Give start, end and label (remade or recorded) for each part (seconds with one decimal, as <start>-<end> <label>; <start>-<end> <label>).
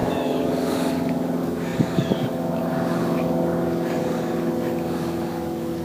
0.0-5.8 remade